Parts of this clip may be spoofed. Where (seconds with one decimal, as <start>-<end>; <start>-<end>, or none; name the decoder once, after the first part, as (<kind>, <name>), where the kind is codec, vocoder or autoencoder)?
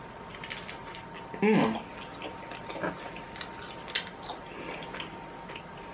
none